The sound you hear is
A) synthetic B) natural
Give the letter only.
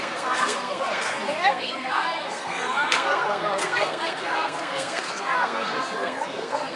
A